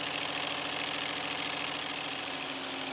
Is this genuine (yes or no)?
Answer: yes